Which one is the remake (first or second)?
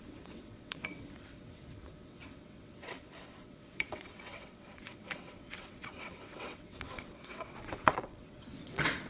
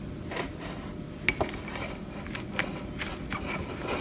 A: first